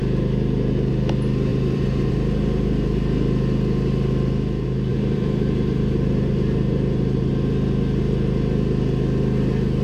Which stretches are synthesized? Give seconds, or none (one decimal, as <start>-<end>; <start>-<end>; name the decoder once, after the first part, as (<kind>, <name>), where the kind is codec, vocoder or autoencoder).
1.5-2.1 (vocoder, BigVGAN v2); 4.9-7.3